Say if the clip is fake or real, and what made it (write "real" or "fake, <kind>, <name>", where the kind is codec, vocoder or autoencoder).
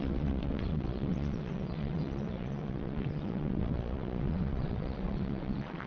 fake, vocoder, WaveNeXt